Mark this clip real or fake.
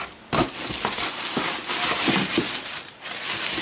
real